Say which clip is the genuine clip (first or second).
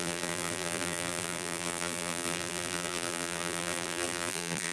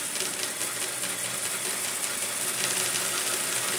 second